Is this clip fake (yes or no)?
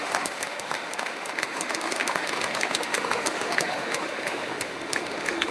yes